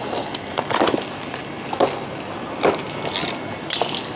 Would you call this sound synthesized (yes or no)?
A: no